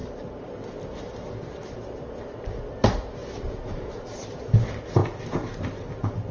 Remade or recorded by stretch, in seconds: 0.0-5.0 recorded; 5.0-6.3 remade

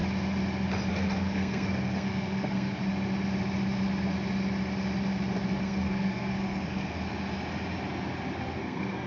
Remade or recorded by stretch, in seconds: 0.0-0.9 recorded; 0.9-2.8 remade; 2.8-5.6 recorded; 5.6-7.1 remade; 7.1-8.6 recorded; 8.6-9.1 remade

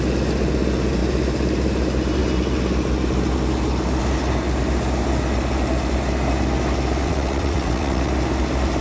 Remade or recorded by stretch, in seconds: 0.0-7.0 recorded; 7.0-8.1 remade; 8.1-8.8 recorded

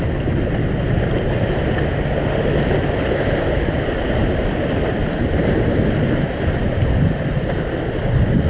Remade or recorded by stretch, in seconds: 0.0-5.0 recorded; 5.0-6.9 remade; 6.9-8.5 recorded

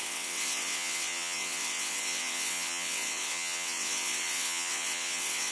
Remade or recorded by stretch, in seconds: 0.0-5.5 remade

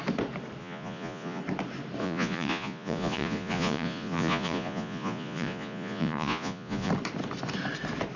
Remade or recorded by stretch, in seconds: 0.0-0.6 recorded; 0.6-1.4 remade; 1.4-2.0 recorded; 2.0-6.9 remade; 6.9-8.2 recorded

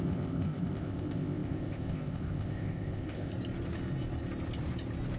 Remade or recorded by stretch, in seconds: 0.0-3.3 remade; 3.3-5.2 recorded